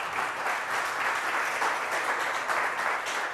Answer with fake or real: real